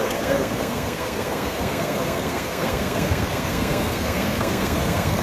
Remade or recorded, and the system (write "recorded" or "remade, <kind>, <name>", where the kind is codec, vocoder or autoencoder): remade, codec, SNAC